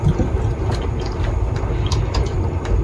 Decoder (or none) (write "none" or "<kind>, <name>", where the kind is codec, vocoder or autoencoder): none